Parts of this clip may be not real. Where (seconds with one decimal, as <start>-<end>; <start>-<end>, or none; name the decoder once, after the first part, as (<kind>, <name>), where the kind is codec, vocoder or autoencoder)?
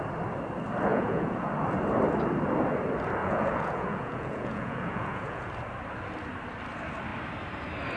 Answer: 0.9-1.5 (vocoder, Vocos); 3.2-5.5